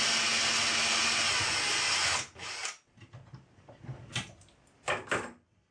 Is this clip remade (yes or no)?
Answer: no